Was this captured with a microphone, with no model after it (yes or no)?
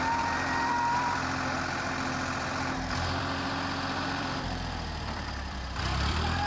no